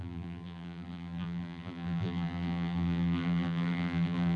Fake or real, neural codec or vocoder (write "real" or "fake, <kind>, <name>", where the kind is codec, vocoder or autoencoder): fake, vocoder, BigVGAN v2